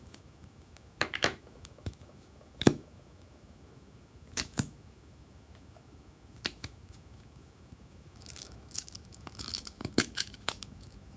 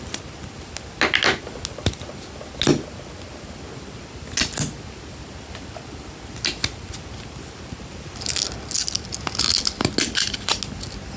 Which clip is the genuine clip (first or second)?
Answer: second